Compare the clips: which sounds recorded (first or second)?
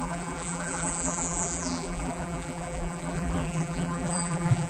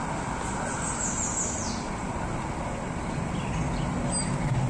second